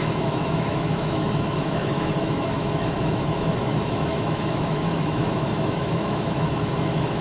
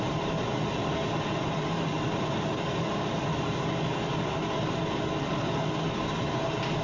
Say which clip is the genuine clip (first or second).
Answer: second